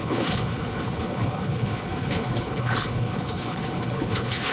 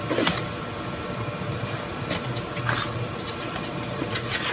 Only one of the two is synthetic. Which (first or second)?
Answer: first